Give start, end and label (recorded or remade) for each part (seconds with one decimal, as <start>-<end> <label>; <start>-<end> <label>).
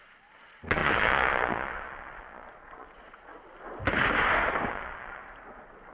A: 0.0-3.3 remade; 3.3-4.7 recorded; 4.7-5.2 remade; 5.2-5.9 recorded